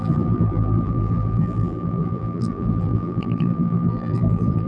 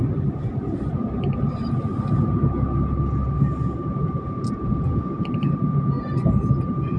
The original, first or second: second